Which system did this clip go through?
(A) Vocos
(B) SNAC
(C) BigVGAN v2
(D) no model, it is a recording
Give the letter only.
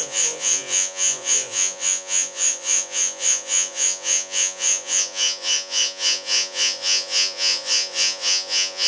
A